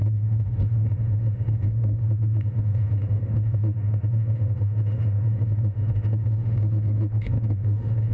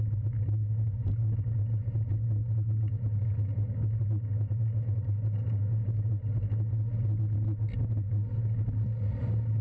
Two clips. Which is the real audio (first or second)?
second